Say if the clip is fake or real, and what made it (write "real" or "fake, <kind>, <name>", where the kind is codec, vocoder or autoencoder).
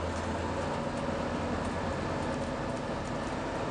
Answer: real